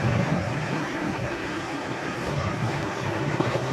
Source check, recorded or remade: remade